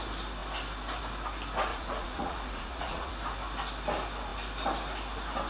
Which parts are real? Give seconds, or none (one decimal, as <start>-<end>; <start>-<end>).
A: 0.0-1.7; 3.1-5.5